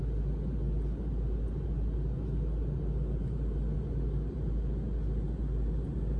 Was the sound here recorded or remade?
recorded